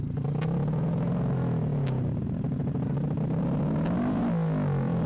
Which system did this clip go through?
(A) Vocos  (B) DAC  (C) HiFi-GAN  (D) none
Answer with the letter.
D